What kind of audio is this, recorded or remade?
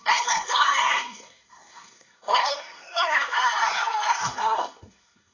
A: remade